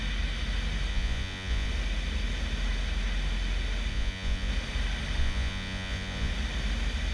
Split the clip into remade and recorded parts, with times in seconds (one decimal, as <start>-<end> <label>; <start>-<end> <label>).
0.0-0.9 recorded; 0.9-1.7 remade; 1.7-3.9 recorded; 3.9-4.5 remade; 4.5-5.2 recorded; 5.2-6.3 remade; 6.3-7.1 recorded